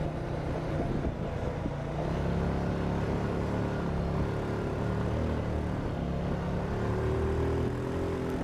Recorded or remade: recorded